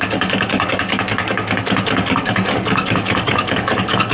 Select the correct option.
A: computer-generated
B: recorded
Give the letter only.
A